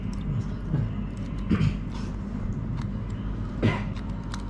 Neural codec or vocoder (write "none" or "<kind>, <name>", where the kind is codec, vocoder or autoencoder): none